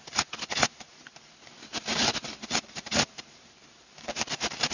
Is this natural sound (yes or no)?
no